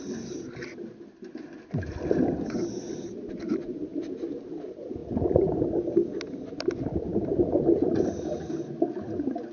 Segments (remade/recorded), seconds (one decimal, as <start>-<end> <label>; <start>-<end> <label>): 0.0-9.5 recorded